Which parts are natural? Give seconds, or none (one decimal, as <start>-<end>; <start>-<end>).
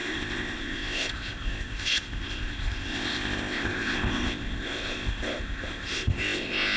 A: none